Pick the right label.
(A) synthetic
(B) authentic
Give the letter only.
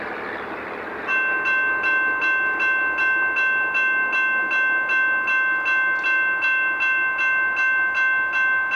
B